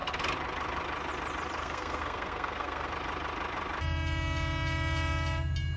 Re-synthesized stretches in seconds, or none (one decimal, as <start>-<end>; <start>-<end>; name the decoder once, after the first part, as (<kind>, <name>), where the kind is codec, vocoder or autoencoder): 1.6-2.9 (codec, SNAC)